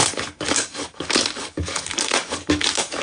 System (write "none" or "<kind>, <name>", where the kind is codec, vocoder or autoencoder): codec, DAC